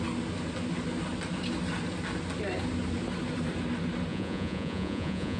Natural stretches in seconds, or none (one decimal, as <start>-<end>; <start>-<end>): 0.0-4.1